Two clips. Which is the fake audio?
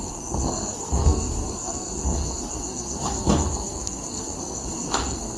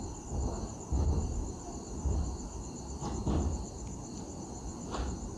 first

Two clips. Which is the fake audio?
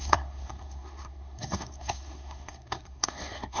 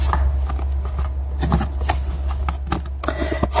first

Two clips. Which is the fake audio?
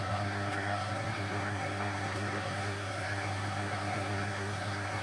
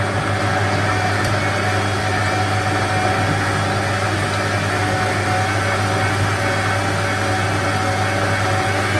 first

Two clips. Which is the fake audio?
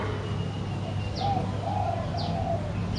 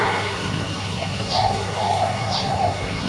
second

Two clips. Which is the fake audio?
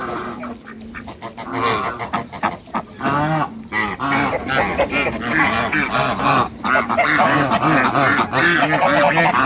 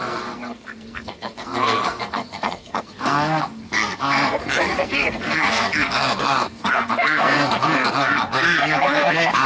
second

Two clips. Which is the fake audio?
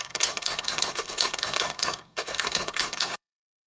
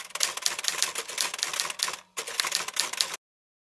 first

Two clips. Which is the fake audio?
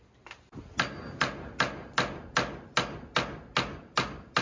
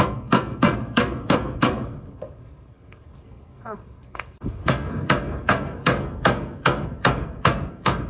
second